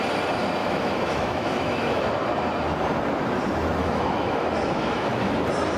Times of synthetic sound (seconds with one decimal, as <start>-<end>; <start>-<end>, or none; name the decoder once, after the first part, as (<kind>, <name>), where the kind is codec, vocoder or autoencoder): 0.6-2.0 (autoencoder, DAC-VAE); 3.8-5.3